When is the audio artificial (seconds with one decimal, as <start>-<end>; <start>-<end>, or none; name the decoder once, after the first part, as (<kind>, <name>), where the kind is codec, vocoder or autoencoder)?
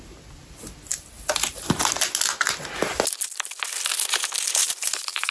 4.6-5.3 (vocoder, BigVGAN v2)